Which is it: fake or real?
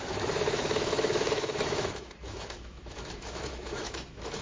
fake